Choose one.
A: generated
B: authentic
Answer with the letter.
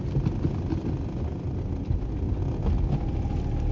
B